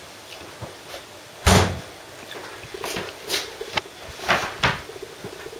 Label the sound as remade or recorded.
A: recorded